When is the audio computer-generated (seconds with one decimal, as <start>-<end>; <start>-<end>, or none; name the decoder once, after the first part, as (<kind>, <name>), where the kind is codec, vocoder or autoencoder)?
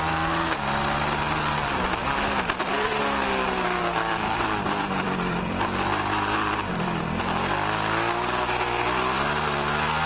2.0-3.0 (vocoder, BigVGAN v2); 3.8-7.2